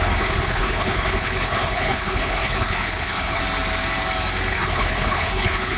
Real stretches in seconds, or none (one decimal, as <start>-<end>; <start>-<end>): 3.4-4.5